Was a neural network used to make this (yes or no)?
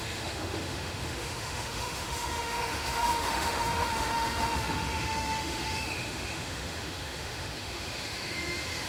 yes